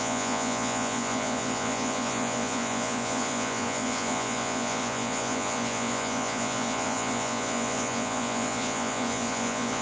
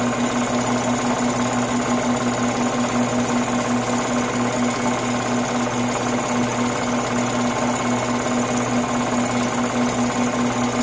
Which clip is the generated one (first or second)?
first